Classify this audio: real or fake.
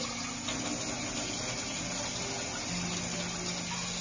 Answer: real